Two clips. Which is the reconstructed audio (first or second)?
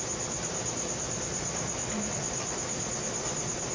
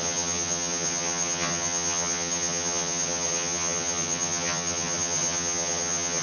second